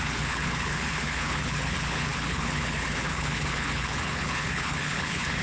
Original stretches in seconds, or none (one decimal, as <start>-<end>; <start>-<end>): none